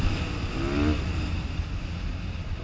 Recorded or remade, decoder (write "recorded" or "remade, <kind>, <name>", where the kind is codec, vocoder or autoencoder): recorded